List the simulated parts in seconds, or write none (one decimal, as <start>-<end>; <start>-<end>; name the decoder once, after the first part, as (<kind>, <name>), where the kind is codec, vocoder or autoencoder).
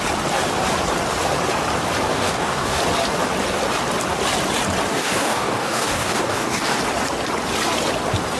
2.1-2.8 (codec, DAC); 4.9-6.8